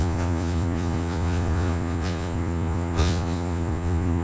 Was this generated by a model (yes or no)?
yes